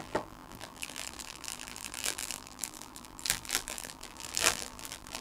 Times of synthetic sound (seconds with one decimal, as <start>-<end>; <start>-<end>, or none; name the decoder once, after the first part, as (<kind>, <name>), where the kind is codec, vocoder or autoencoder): 0.0-5.2 (vocoder, BigVGAN v2)